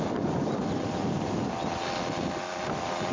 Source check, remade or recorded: recorded